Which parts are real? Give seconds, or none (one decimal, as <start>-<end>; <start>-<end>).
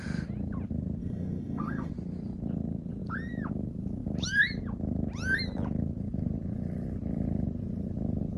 0.0-1.0; 1.9-8.4